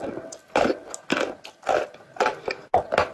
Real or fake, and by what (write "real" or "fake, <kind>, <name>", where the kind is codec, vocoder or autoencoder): real